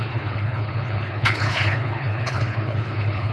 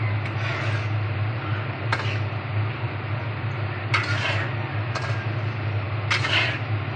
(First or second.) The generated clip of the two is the first